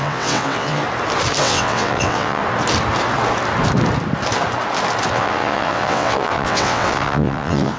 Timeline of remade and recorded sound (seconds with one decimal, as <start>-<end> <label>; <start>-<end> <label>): 0.0-0.8 remade; 0.8-1.4 recorded; 1.4-2.4 remade; 2.4-5.1 recorded; 5.1-7.8 remade

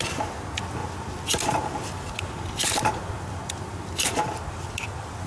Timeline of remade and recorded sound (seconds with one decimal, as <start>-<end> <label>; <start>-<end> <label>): 0.0-5.3 recorded

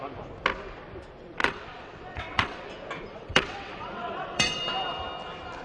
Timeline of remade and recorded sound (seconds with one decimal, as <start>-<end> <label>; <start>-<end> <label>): 0.0-1.4 recorded; 1.4-2.7 remade; 2.7-3.1 recorded; 3.1-4.6 remade; 4.6-5.6 recorded

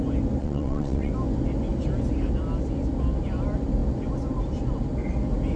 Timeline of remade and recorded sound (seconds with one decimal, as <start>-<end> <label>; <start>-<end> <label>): 0.0-0.4 recorded; 0.4-1.1 remade; 1.1-5.6 recorded

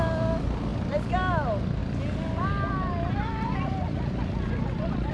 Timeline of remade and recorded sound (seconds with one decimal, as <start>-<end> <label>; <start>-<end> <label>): 0.0-5.1 recorded

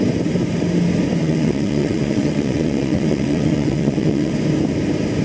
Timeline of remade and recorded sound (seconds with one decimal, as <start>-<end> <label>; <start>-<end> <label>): 0.0-1.2 recorded; 1.2-4.3 remade; 4.3-5.2 recorded

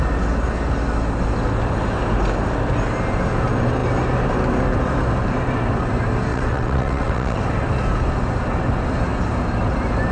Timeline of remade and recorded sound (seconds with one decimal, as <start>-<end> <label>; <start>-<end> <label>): 0.0-6.3 recorded; 6.3-7.4 remade; 7.4-10.1 recorded